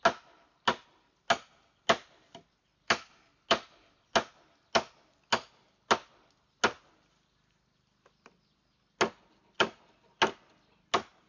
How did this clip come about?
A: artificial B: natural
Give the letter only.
B